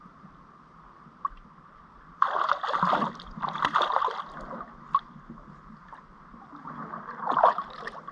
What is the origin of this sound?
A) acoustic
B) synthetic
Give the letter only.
A